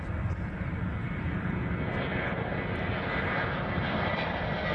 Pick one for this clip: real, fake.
real